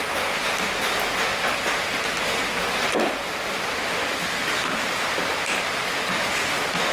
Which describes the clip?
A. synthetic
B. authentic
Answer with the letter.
B